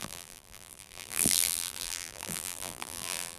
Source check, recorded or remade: remade